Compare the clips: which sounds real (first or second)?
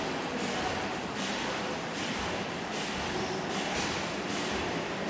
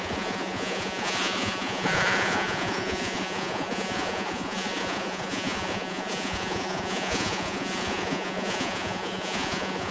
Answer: first